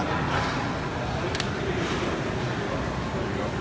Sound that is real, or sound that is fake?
real